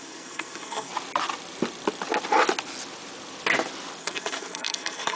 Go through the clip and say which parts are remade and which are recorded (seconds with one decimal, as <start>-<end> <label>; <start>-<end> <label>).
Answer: 0.0-0.9 remade; 0.9-4.0 recorded; 4.0-5.2 remade